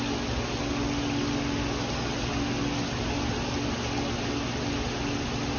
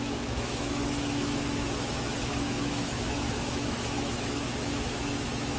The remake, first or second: second